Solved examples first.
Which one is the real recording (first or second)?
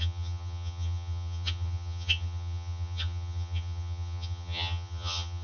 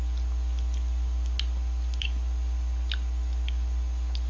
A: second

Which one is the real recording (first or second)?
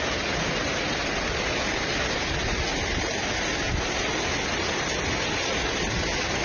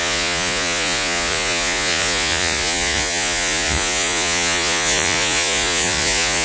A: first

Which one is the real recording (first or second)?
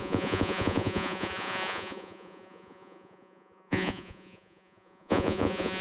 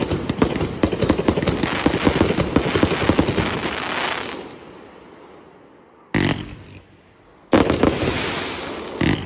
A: second